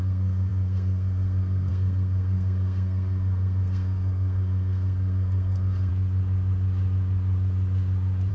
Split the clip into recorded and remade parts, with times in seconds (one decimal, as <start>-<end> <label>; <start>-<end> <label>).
0.0-5.9 remade; 5.9-8.3 recorded